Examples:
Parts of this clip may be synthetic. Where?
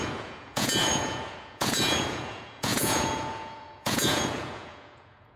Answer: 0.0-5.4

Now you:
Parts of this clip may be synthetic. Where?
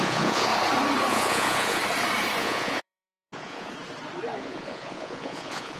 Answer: 0.0-0.5; 1.1-1.8; 2.4-3.7; 4.4-5.8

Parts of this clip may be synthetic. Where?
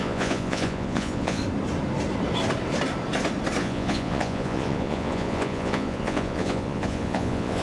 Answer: 0.0-1.4; 3.6-7.6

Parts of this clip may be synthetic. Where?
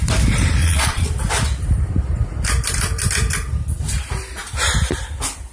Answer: 0.6-1.1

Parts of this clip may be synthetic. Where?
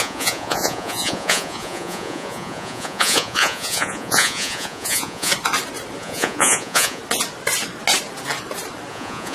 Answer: 0.0-5.3; 6.0-7.0; 8.9-9.3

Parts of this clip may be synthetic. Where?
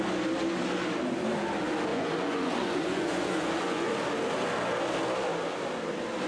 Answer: 1.9-3.9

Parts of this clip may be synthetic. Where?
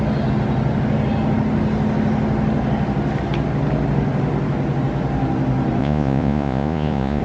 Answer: 5.8-7.2